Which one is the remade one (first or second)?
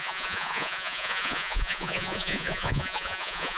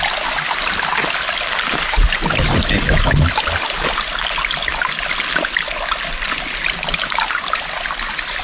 first